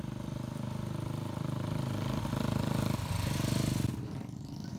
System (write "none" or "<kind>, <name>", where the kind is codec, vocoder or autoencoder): none